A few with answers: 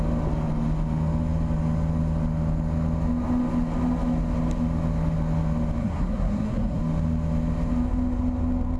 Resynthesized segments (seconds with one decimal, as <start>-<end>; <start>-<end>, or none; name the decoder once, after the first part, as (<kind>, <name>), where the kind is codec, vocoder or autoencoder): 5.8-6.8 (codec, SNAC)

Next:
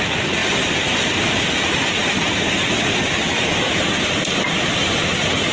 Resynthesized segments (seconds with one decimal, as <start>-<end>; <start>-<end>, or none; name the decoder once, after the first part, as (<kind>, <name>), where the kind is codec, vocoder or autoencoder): none

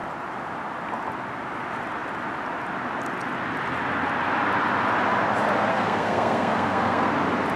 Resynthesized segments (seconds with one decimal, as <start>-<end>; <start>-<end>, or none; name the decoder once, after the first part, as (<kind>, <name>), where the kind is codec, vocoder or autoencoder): 5.7-7.1 (codec, SNAC)

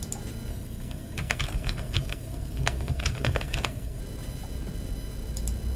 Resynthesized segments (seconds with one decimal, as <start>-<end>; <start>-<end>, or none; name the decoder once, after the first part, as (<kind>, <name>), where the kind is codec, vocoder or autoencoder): 0.5-4.0 (codec, SNAC)

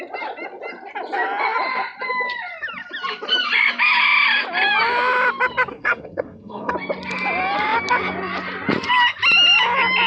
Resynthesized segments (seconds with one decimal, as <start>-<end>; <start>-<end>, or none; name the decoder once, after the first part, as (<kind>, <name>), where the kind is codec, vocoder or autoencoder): 5.7-6.7 (codec, SNAC)